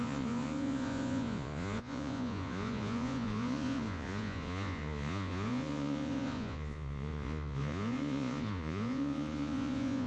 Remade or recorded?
remade